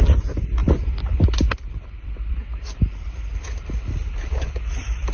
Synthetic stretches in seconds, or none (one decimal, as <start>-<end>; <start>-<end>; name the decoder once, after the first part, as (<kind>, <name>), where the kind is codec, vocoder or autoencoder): none